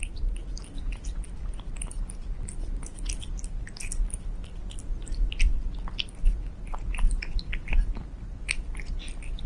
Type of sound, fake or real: real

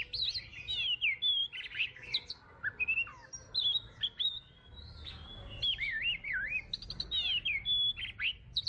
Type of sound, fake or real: real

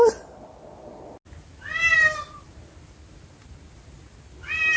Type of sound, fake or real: real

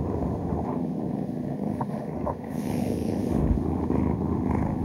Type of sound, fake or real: fake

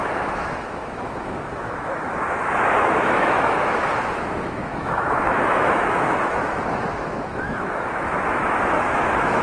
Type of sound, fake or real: fake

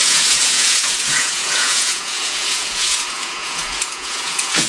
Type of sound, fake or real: fake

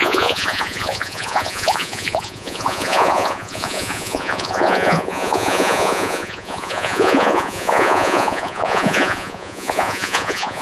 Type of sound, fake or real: fake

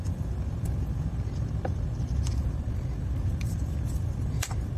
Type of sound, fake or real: fake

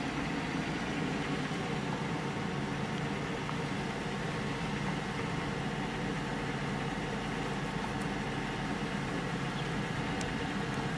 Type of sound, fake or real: real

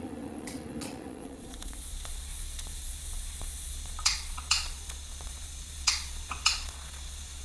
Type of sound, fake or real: fake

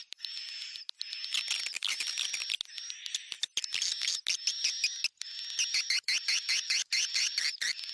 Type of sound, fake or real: real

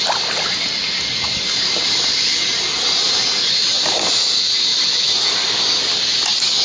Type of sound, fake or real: real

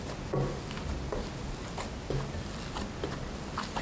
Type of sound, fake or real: real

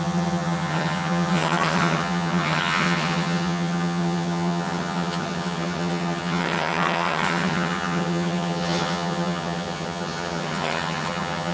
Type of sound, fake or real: fake